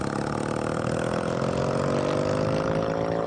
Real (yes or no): yes